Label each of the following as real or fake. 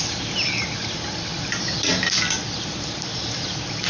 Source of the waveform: fake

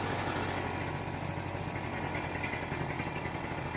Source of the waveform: real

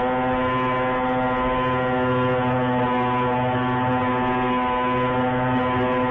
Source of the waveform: real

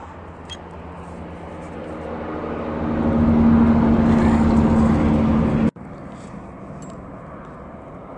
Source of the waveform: real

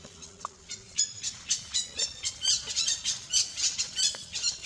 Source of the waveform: fake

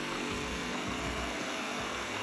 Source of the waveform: fake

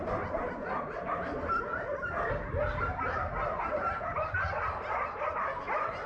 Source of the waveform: real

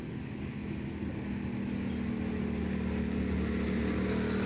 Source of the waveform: real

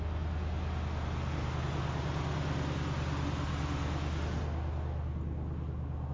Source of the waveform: real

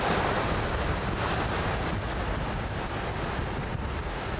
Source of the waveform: real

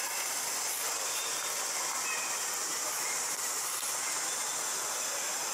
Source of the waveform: real